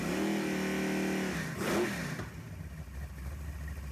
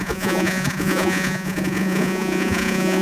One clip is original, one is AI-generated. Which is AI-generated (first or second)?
second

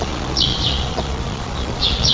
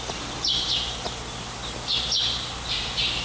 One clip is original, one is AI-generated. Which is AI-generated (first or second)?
first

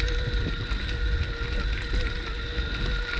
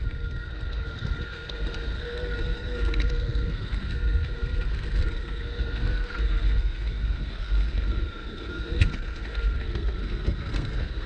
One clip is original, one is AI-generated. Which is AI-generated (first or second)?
second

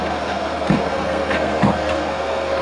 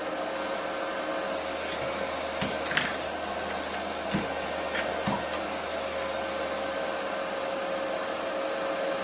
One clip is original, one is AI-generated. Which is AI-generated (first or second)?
first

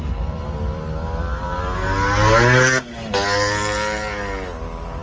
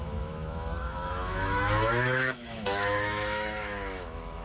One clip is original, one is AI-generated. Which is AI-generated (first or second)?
second